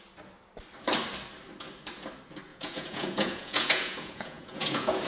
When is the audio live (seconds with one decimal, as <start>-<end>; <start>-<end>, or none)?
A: 0.0-2.5